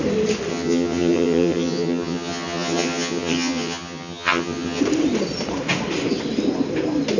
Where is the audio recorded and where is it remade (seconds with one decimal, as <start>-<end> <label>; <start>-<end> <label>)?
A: 0.0-0.5 recorded; 0.5-4.8 remade; 4.8-7.2 recorded